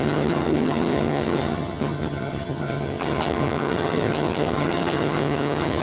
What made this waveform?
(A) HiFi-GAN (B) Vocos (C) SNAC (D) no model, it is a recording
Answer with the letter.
A